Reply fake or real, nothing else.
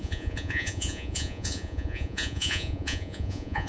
fake